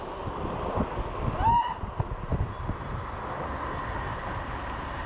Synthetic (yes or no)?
no